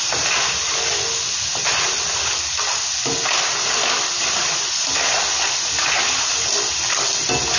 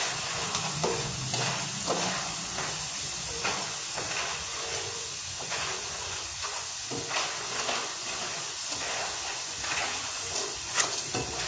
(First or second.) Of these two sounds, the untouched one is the first